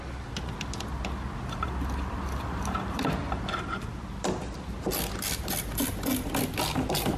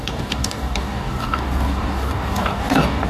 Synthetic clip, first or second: second